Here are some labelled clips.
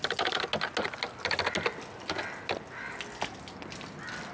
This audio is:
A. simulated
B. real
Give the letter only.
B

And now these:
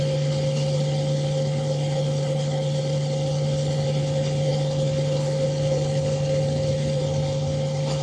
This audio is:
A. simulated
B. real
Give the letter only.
A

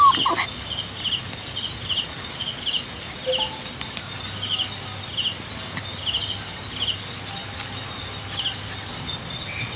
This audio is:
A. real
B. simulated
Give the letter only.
A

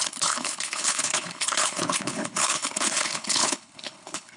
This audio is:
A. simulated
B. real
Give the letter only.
A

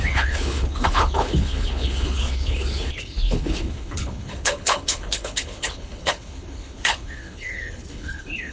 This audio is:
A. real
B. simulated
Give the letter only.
B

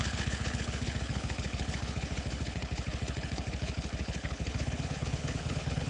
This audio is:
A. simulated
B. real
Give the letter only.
A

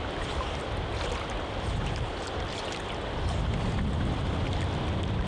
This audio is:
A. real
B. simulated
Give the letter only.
A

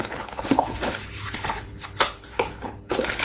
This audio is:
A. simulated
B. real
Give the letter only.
A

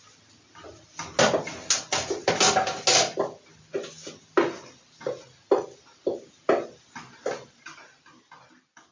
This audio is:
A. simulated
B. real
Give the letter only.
B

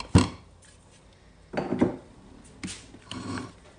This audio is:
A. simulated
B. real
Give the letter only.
B